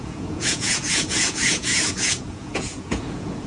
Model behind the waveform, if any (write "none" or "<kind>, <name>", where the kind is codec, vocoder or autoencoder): vocoder, Vocos